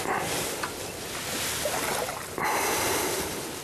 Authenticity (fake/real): real